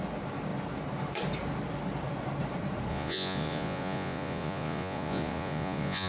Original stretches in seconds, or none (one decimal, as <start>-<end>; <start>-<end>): 0.0-2.9